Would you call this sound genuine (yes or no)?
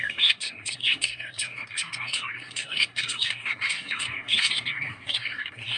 no